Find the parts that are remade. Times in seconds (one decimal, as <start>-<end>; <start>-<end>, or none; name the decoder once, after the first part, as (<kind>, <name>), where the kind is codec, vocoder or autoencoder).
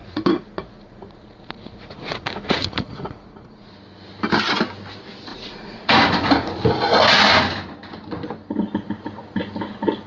0.0-3.7 (vocoder, Vocos); 5.3-6.5